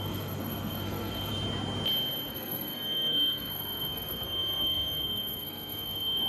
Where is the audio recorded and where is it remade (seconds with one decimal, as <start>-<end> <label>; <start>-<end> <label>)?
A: 0.0-1.3 remade; 1.3-2.3 recorded; 2.3-6.3 remade